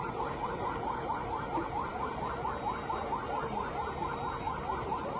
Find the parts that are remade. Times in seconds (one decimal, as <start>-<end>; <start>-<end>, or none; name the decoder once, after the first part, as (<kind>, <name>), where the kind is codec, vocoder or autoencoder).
none